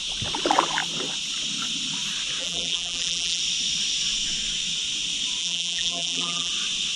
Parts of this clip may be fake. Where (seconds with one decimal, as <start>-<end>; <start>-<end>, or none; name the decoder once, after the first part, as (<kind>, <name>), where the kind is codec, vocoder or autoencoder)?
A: 2.4-3.4 (vocoder, BigVGAN v2); 5.4-6.5